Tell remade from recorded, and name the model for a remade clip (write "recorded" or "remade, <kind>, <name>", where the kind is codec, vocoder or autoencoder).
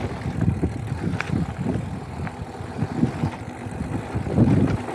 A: recorded